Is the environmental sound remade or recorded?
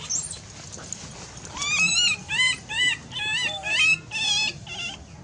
recorded